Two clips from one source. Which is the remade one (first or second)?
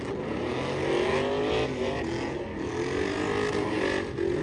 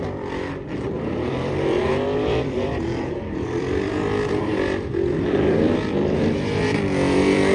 second